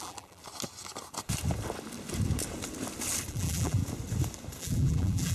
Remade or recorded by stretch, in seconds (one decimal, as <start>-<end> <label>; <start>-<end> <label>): 0.0-0.4 remade; 0.4-3.3 recorded; 3.3-3.8 remade; 3.8-4.6 recorded; 4.6-5.3 remade